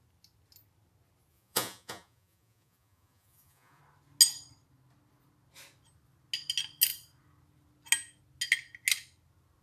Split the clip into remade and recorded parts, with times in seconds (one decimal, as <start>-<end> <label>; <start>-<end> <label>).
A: 0.0-1.3 recorded; 1.3-3.8 remade; 3.8-9.6 recorded